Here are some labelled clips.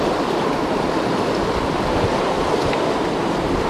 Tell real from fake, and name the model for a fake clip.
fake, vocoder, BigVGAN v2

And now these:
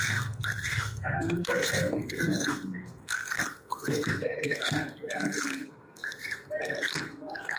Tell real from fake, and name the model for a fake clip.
fake, codec, SNAC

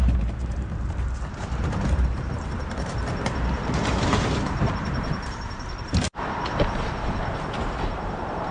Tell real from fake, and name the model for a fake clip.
fake, vocoder, BigVGAN v2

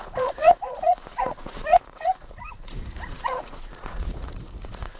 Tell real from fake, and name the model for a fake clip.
fake, vocoder, Vocos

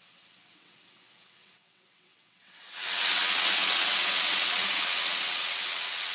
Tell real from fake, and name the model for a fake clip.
fake, vocoder, WaveNeXt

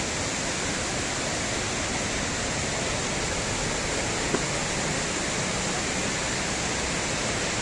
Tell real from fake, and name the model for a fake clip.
real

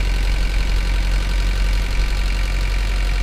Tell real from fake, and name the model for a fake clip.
real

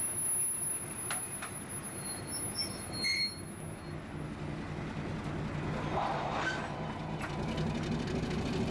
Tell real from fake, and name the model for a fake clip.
real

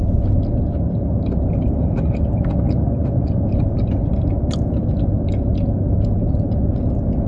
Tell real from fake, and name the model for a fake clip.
real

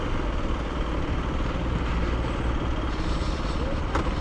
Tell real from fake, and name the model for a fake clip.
real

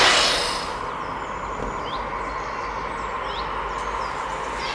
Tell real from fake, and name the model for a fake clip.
real